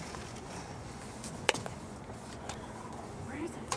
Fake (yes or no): yes